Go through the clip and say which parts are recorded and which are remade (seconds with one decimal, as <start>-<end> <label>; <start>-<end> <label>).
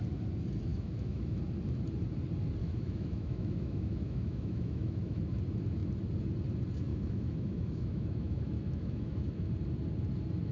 0.0-0.7 recorded; 0.7-1.4 remade; 1.4-2.6 recorded; 2.6-5.2 remade; 5.2-6.9 recorded; 6.9-9.5 remade; 9.5-10.5 recorded